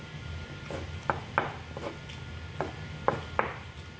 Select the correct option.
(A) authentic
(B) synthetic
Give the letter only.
A